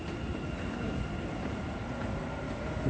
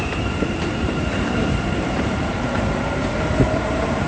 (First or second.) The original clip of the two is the first